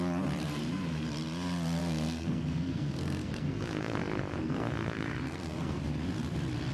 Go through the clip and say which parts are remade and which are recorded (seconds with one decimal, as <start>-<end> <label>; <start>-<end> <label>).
0.0-1.8 recorded; 1.8-5.8 remade; 5.8-6.7 recorded